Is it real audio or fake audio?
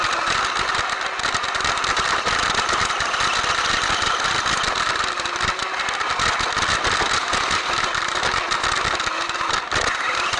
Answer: real